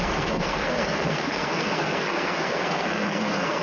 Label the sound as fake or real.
fake